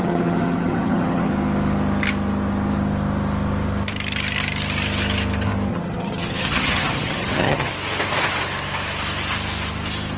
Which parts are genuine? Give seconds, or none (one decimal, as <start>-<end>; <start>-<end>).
1.3-5.7; 7.7-10.2